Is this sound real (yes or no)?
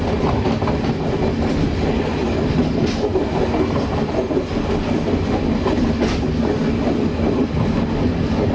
yes